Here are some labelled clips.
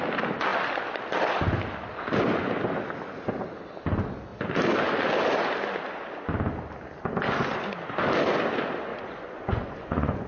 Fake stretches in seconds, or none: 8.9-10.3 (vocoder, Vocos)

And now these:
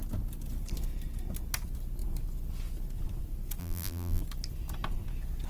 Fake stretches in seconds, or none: 3.6-4.2 (vocoder, BigVGAN v2)

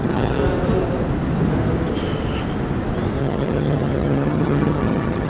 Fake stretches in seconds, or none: 0.0-0.4 (vocoder, HiFi-GAN); 3.2-5.3

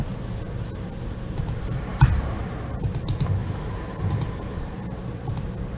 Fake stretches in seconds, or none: 1.9-2.4 (vocoder, BigVGAN v2); 3.4-4.8

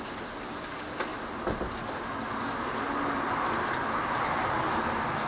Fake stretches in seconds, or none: none

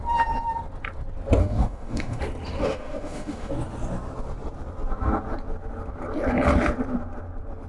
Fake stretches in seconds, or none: 1.4-2.2 (autoencoder, DAC-VAE); 2.6-3.5